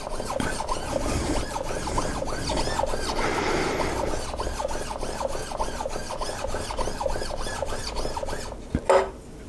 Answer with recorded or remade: recorded